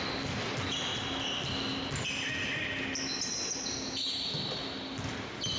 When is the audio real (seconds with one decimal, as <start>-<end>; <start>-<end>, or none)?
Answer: 0.0-5.6